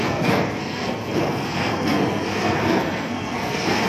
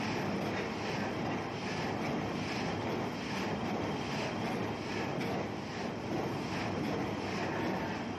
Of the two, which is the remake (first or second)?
first